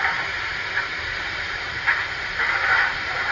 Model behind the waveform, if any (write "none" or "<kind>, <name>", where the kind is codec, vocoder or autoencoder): none